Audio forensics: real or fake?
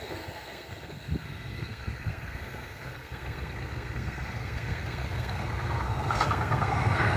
fake